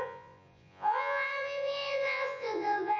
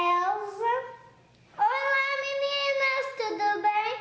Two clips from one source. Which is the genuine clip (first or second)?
second